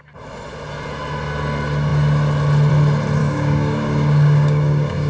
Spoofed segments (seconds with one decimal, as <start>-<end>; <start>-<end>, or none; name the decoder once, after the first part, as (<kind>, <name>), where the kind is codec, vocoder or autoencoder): 3.2-5.1 (codec, DAC)